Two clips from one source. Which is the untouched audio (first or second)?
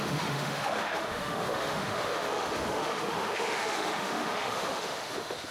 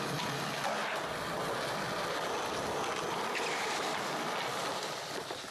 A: second